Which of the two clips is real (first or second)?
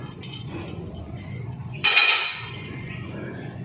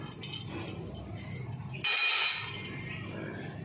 second